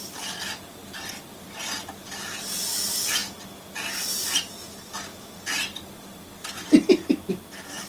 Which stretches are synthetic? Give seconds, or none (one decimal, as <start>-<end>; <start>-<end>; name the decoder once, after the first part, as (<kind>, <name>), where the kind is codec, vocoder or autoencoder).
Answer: none